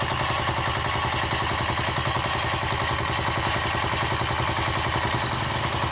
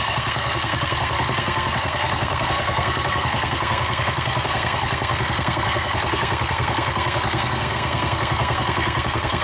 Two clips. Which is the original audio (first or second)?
first